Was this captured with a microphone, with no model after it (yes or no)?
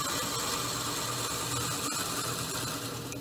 yes